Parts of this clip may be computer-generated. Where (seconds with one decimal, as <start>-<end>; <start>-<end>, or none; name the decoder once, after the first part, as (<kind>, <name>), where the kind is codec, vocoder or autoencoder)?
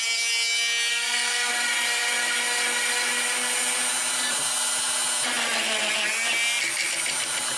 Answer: 0.9-1.5 (codec, SNAC)